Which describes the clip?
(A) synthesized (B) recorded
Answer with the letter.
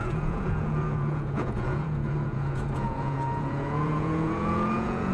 A